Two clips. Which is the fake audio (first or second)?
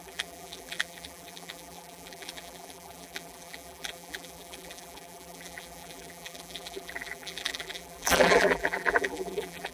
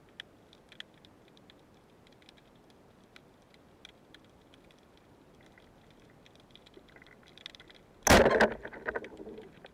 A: first